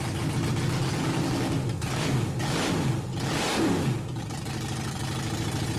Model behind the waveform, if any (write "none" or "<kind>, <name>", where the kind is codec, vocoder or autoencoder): none